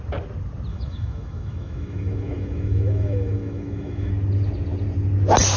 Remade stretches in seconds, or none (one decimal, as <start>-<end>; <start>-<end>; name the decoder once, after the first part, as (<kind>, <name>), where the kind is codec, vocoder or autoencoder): 0.7-4.1 (autoencoder, DAC-VAE)